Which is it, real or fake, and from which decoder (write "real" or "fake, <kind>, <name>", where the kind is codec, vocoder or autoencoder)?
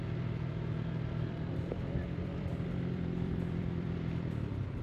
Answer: fake, vocoder, BigVGAN v2